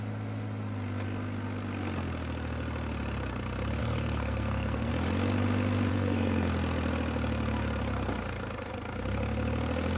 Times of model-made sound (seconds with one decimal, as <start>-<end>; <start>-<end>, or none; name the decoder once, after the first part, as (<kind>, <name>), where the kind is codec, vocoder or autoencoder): 3.8-4.9 (codec, SNAC); 5.9-6.5